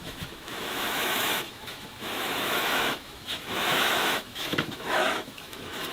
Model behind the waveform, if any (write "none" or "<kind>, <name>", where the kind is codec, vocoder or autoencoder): autoencoder, DAC-VAE